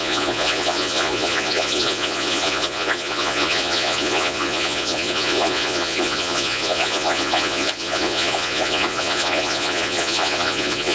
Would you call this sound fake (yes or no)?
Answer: yes